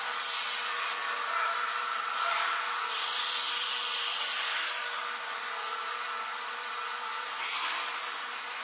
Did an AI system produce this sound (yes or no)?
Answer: yes